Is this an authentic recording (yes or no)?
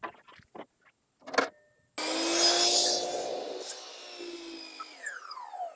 yes